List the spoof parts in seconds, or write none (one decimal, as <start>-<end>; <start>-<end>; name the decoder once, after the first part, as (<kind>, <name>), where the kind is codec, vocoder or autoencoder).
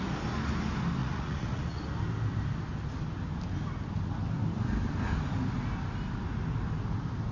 1.0-1.8 (vocoder, Vocos)